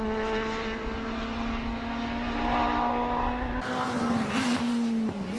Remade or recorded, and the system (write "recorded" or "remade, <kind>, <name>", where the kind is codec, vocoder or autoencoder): recorded